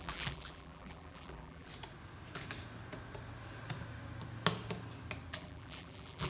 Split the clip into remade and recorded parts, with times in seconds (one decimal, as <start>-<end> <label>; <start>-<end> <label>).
0.0-1.7 remade; 1.7-5.3 recorded; 5.3-6.3 remade